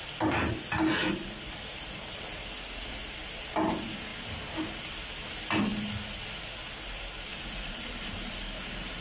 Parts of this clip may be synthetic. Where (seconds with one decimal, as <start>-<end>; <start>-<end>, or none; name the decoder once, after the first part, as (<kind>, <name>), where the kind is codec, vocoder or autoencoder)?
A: 0.9-2.2 (vocoder, BigVGAN v2); 7.3-9.0